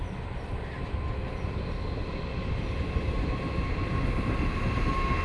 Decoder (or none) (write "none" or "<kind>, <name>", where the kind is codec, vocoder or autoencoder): none